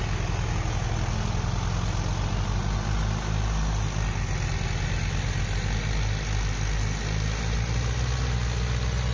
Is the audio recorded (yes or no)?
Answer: yes